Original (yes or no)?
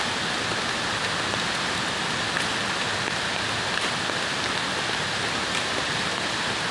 yes